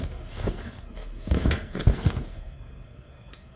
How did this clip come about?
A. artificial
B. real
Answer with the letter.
A